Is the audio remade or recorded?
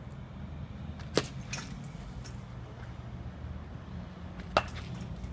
recorded